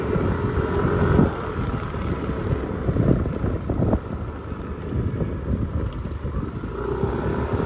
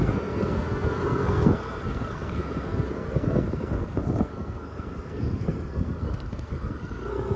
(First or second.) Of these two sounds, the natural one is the first